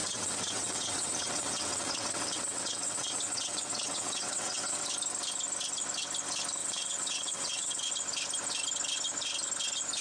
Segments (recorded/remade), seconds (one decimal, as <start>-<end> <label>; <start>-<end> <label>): 0.0-4.8 remade; 4.8-6.6 recorded; 6.6-7.9 remade; 7.9-10.0 recorded